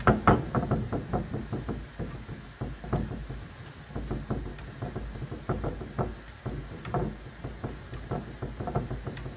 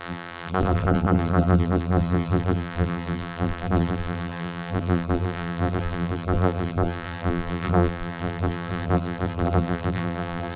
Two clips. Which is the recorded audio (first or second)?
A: first